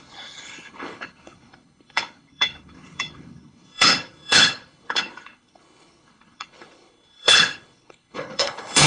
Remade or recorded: remade